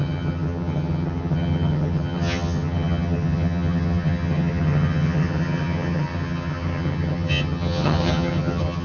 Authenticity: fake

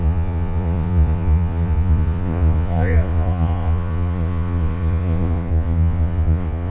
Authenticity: fake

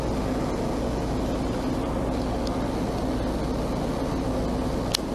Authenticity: real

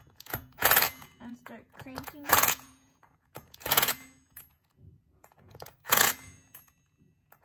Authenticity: fake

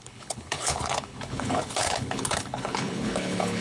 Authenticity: fake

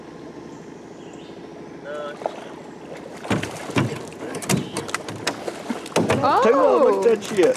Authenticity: real